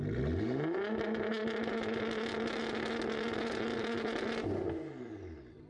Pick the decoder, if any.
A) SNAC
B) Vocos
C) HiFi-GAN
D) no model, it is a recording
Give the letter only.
D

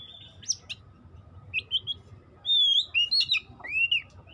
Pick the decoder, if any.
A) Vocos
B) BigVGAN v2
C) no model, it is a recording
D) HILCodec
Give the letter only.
C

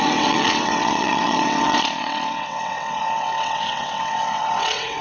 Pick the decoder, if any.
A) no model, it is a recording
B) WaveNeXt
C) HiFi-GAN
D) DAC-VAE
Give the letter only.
B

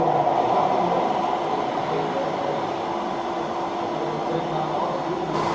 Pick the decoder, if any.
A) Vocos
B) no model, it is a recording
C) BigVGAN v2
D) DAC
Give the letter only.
B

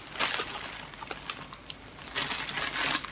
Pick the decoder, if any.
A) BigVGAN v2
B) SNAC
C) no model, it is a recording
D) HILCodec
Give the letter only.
C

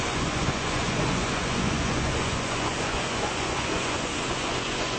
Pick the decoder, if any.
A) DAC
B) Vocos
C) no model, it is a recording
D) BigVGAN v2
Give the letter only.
B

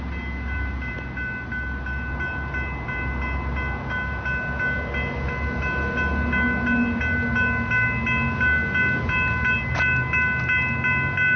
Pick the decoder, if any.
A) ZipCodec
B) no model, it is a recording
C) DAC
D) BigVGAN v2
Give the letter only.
B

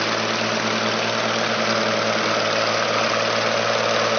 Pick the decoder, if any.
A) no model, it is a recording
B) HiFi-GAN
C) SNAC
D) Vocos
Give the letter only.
A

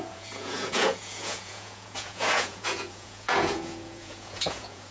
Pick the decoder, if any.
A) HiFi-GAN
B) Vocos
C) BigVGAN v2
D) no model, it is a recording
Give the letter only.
B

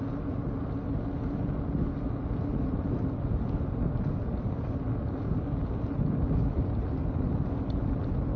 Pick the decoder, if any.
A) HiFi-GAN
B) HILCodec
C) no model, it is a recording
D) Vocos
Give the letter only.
C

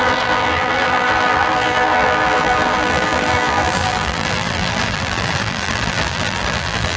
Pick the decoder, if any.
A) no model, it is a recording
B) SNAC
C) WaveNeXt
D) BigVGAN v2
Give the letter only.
D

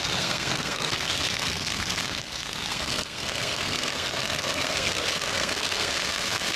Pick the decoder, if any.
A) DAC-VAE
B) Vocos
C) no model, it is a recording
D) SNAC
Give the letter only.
D